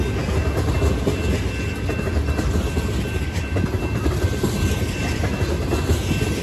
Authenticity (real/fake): real